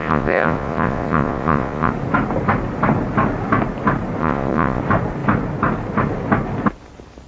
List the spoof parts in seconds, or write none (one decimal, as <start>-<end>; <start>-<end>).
0.0-1.9; 4.2-4.8